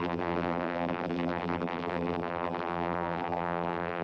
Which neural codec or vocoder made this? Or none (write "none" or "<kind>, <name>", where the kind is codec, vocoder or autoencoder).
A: vocoder, BigVGAN v2